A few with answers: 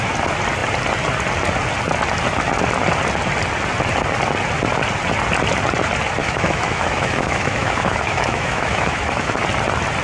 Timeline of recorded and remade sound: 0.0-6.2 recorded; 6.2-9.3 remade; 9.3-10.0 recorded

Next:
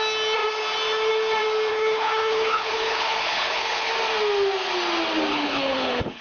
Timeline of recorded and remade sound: 0.0-1.7 recorded; 1.7-3.9 remade; 3.9-5.3 recorded; 5.3-6.2 remade

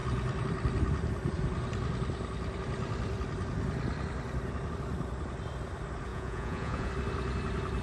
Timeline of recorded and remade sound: 0.0-6.1 recorded; 6.1-6.9 remade; 6.9-7.8 recorded

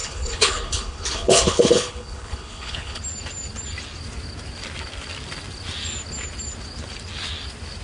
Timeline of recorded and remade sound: 0.0-3.0 remade; 3.0-7.8 recorded

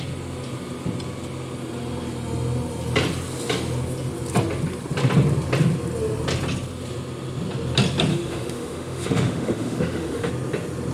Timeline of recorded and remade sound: 0.0-8.1 recorded; 8.1-10.3 remade; 10.3-10.9 recorded

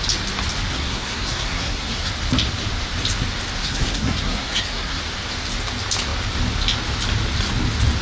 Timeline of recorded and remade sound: 0.0-0.7 recorded; 0.7-2.1 remade; 2.1-3.6 recorded; 3.6-5.0 remade; 5.0-8.0 recorded

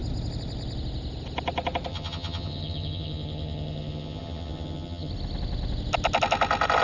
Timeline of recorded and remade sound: 0.0-1.9 recorded; 1.9-5.1 remade; 5.1-6.8 recorded